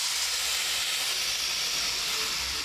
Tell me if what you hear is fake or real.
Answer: real